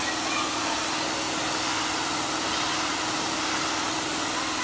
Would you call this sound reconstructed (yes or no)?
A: no